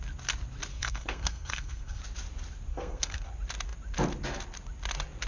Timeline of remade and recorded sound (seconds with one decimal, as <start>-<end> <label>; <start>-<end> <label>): 0.0-0.7 recorded; 0.7-2.0 remade; 2.0-2.7 recorded; 2.7-3.3 remade; 3.3-5.3 recorded

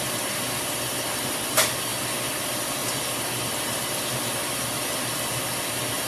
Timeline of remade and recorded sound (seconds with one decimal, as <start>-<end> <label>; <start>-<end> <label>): 0.0-6.1 recorded